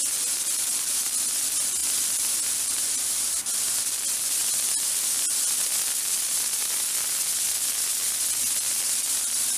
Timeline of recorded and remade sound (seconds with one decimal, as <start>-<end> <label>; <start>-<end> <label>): 0.0-1.8 recorded; 1.8-3.8 remade; 3.8-4.4 recorded; 4.4-5.8 remade; 5.8-9.6 recorded